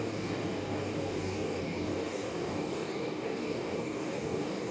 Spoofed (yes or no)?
yes